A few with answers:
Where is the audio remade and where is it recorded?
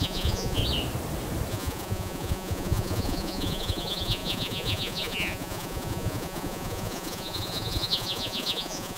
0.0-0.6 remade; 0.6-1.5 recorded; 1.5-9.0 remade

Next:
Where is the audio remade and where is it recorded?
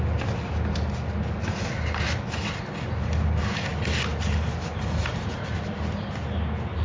0.0-6.8 recorded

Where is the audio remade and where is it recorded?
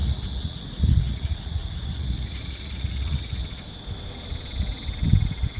0.0-3.4 remade; 3.4-5.6 recorded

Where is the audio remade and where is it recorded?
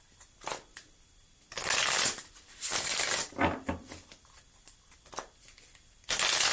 0.0-6.5 recorded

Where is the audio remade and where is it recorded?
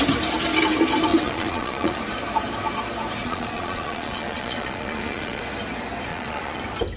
0.0-1.1 recorded; 1.1-2.0 remade; 2.0-3.2 recorded; 3.2-5.4 remade; 5.4-6.1 recorded; 6.1-6.6 remade; 6.6-7.0 recorded